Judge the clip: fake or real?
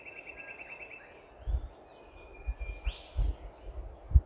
real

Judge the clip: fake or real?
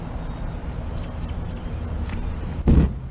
real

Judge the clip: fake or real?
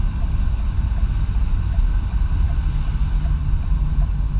real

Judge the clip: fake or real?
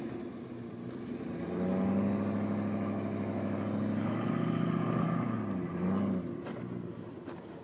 real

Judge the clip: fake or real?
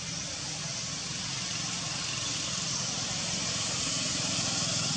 real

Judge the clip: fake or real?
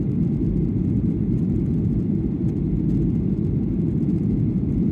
real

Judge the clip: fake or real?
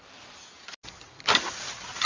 real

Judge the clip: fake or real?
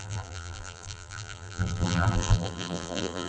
fake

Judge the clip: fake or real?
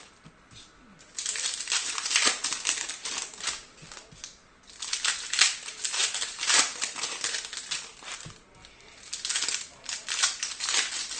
real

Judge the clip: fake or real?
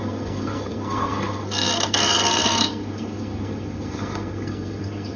fake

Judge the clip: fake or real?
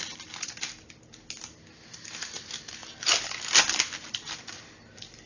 real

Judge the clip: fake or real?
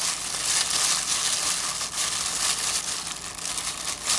real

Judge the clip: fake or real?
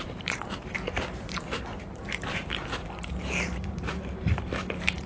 fake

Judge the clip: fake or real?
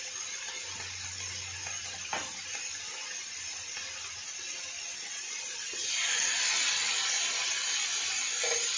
real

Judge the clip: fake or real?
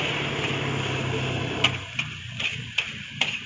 real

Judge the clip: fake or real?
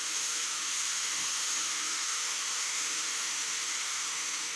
fake